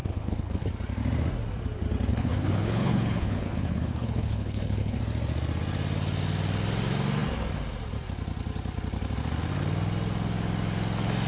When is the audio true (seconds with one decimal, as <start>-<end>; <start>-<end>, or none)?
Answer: 0.7-2.1; 5.0-11.3